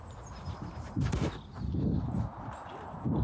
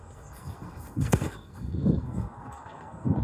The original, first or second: first